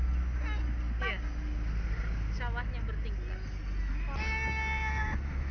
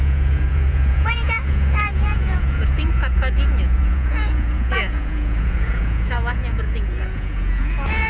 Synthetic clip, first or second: second